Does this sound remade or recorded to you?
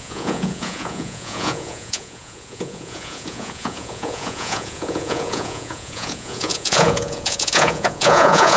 remade